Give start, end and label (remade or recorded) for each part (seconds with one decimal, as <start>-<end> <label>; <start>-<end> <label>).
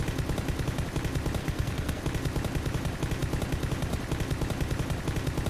0.0-1.4 recorded; 1.4-2.0 remade; 2.0-5.5 recorded